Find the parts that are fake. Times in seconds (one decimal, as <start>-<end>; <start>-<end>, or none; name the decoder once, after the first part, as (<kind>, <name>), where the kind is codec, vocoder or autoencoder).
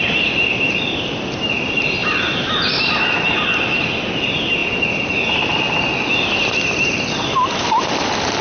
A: 2.0-2.9 (vocoder, BigVGAN v2)